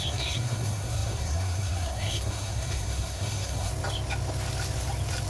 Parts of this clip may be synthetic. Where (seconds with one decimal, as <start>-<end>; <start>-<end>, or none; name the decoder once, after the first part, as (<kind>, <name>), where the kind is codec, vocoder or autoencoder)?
0.0-3.7 (codec, SNAC)